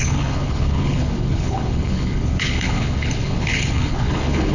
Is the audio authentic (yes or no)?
no